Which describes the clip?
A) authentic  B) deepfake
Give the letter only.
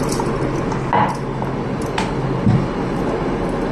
A